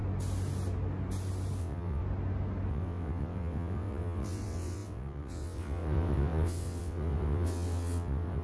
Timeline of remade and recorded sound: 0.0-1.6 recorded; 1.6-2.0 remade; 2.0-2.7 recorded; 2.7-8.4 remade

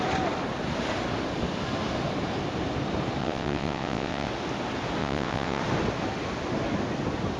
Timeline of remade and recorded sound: 0.0-3.2 recorded; 3.2-4.3 remade; 4.3-5.0 recorded; 5.0-5.6 remade; 5.6-7.4 recorded

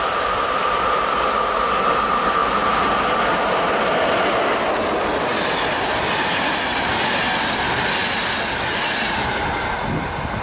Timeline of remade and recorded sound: 0.0-10.4 recorded